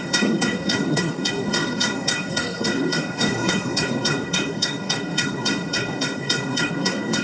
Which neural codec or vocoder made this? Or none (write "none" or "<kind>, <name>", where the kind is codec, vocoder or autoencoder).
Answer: codec, SNAC